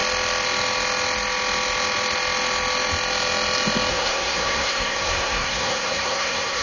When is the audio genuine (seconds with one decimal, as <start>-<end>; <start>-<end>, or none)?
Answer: 0.0-3.9